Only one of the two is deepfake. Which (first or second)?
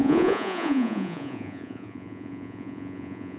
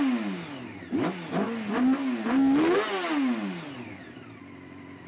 first